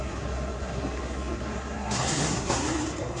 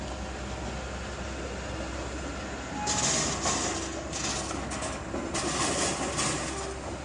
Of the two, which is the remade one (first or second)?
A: first